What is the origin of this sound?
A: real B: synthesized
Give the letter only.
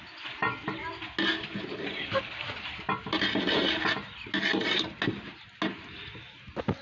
A